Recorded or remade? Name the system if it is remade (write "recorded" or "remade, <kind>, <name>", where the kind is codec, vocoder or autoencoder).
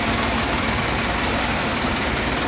recorded